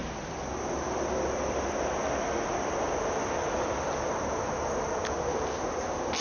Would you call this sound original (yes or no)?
yes